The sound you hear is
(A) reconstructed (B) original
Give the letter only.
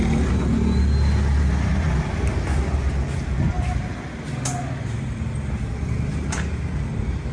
B